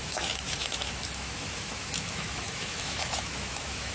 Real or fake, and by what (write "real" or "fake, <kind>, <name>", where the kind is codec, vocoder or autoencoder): fake, autoencoder, DAC-VAE